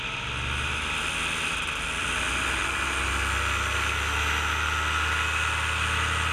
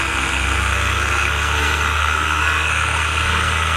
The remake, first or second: second